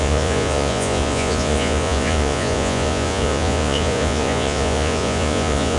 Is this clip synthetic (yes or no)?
yes